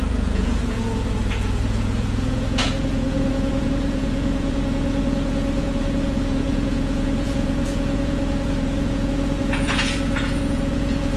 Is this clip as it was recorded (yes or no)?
no